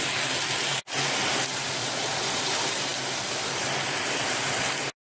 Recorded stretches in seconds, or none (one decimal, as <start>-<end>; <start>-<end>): 0.0-1.8; 2.5-5.0